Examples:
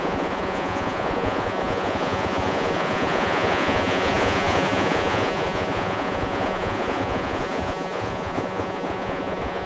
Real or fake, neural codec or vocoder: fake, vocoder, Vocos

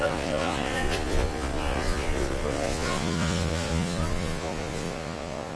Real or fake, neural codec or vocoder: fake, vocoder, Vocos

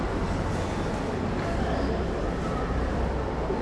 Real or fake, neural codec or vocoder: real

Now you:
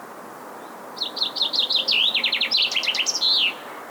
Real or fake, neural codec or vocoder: real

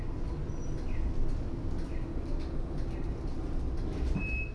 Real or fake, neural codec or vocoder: real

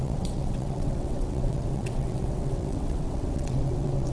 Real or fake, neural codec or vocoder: fake, vocoder, WaveNeXt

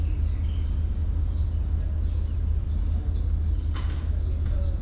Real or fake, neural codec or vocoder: real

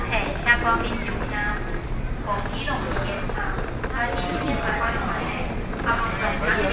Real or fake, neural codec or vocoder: real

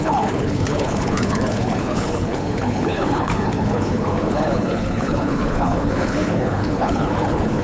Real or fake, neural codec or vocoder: fake, codec, HILCodec